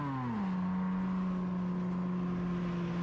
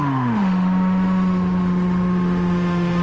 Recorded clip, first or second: first